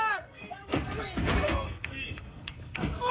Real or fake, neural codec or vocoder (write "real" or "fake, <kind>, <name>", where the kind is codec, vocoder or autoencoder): fake, codec, SNAC